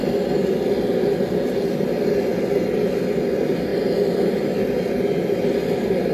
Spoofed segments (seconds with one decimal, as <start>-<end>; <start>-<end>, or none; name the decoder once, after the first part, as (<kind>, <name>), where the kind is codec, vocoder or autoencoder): none